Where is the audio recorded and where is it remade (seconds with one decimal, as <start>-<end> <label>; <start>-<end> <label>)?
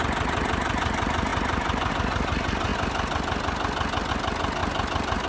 0.0-4.6 recorded; 4.6-5.3 remade